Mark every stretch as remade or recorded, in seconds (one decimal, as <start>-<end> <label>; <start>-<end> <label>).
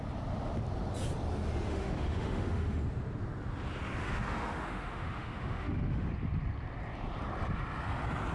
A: 0.0-1.7 recorded; 1.7-2.8 remade; 2.8-4.0 recorded; 4.0-6.1 remade; 6.1-8.3 recorded